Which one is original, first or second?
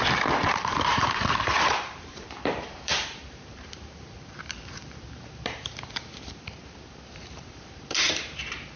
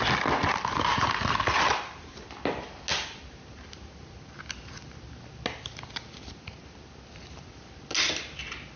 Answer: second